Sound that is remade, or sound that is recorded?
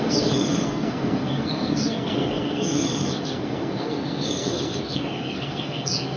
remade